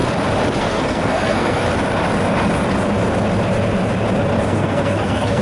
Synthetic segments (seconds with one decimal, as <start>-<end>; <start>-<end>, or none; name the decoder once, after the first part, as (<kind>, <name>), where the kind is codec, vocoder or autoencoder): 0.6-1.6 (codec, SNAC); 4.4-5.4